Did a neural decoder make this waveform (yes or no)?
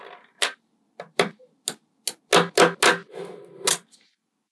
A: no